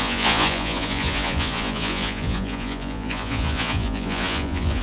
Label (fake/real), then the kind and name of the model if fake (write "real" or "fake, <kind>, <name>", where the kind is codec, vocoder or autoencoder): fake, vocoder, Vocos